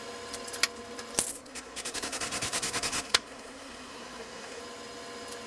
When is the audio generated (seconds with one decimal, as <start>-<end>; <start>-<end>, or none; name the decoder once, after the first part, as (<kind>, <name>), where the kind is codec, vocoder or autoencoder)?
1.3-4.6 (codec, SNAC)